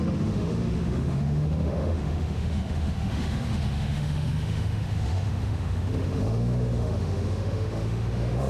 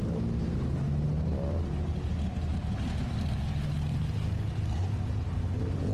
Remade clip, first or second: first